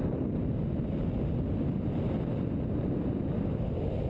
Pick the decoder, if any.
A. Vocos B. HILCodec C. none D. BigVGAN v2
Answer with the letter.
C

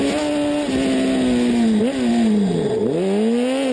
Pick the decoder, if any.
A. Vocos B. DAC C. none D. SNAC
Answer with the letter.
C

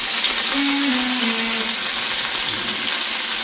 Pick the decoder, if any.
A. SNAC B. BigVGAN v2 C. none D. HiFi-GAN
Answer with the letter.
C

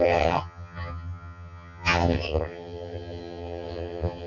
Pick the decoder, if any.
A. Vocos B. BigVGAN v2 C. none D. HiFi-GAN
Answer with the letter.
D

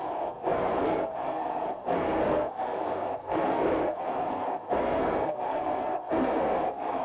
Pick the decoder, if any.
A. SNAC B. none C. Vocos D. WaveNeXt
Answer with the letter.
A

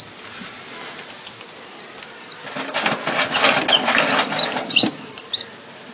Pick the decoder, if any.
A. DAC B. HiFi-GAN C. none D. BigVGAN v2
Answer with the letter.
C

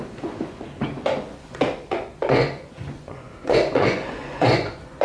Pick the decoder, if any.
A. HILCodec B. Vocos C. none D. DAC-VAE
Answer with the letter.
B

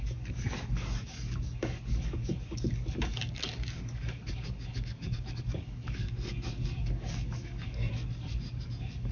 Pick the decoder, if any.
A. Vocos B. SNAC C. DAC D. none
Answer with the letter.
C